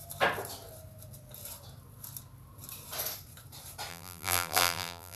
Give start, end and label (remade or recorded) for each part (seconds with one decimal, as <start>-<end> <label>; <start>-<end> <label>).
0.0-3.9 recorded; 3.9-5.2 remade